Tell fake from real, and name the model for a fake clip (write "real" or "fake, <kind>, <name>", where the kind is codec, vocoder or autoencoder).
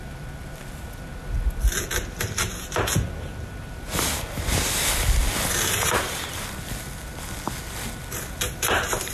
real